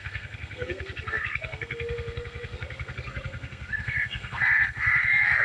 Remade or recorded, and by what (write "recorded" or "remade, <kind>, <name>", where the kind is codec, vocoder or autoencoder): remade, codec, SNAC